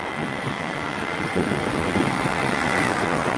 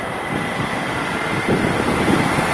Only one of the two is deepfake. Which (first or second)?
first